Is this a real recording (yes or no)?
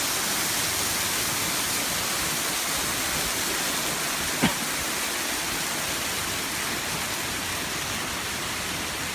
yes